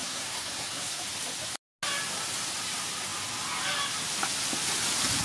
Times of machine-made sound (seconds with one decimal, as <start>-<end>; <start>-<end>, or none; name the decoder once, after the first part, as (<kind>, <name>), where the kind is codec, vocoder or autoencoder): 0.0-1.0 (codec, SNAC)

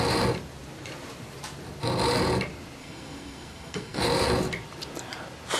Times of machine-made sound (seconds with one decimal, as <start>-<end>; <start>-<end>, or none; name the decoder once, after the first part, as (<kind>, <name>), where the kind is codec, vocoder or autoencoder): 2.8-4.0 (codec, SNAC)

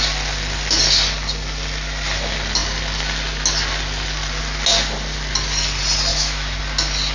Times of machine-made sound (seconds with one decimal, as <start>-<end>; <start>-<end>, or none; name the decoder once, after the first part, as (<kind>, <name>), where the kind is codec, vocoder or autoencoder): 6.1-6.6 (autoencoder, DAC-VAE)

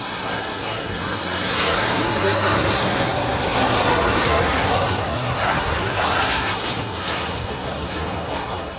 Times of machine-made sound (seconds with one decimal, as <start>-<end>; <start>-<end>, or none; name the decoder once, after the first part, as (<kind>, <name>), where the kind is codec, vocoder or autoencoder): 0.0-8.8 (codec, SNAC)

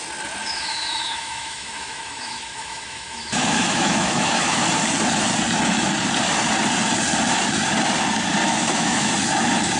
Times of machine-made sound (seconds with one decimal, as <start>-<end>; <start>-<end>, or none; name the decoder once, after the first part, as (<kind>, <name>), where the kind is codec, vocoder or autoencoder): 0.4-4.6 (autoencoder, DAC-VAE); 8.4-9.1

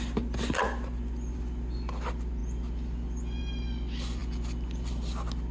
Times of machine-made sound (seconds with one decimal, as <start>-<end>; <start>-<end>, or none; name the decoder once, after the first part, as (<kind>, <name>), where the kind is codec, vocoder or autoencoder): none

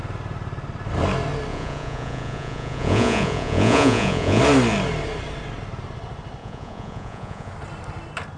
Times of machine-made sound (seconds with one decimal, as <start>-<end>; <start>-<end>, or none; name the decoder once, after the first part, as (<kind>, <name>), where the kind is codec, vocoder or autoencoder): 1.5-4.4 (vocoder, Vocos); 6.4-7.5